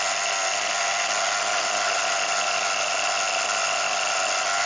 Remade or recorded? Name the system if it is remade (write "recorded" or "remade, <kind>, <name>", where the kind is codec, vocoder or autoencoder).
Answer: recorded